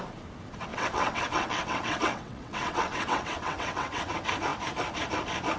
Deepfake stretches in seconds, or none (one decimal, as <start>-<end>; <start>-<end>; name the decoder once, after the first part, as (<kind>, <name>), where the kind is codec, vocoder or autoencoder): 0.7-4.1 (vocoder, WaveNeXt)